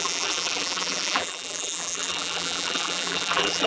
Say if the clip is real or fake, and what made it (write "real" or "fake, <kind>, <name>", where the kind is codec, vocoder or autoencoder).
fake, vocoder, BigVGAN v2